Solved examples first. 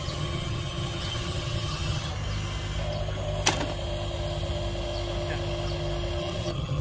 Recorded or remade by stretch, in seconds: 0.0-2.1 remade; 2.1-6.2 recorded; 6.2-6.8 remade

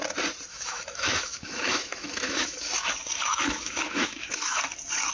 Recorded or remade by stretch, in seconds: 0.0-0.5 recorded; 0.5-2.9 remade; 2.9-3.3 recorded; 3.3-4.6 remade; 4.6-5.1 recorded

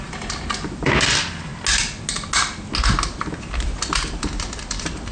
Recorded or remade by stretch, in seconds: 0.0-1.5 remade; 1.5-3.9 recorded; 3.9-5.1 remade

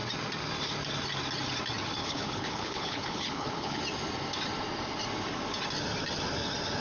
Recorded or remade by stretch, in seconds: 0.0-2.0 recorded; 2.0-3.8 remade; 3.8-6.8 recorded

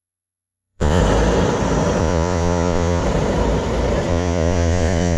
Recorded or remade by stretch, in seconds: 0.0-1.0 remade; 1.0-2.0 recorded; 2.0-3.0 remade; 3.0-4.1 recorded; 4.1-5.2 remade